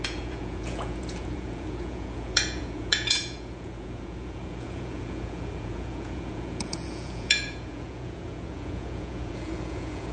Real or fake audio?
fake